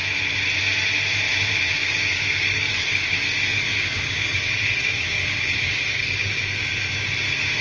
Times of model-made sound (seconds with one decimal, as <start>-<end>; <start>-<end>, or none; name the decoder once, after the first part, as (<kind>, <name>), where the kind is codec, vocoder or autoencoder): 1.8-6.4 (codec, DAC)